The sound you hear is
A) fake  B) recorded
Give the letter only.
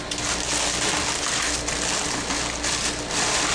B